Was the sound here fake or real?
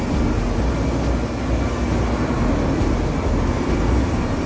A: real